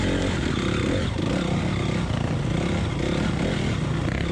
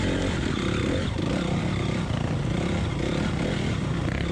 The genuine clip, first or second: first